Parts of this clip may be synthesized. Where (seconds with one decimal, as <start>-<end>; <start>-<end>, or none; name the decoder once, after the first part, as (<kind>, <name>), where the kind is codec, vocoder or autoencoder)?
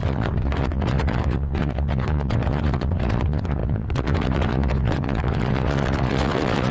0.0-6.7 (vocoder, WaveNeXt)